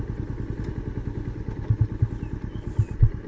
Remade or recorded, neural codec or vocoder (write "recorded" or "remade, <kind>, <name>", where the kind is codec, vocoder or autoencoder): recorded